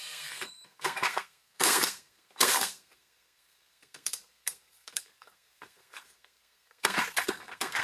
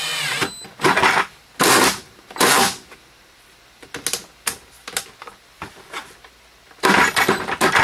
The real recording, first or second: second